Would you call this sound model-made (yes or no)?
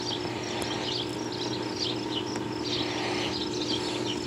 no